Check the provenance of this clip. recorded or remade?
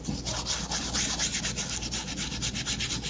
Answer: recorded